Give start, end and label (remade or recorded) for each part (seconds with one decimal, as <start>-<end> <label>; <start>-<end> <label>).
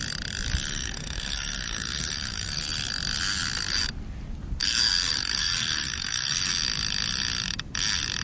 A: 0.0-0.7 recorded; 0.7-2.6 remade; 2.6-4.6 recorded; 4.6-6.5 remade; 6.5-8.2 recorded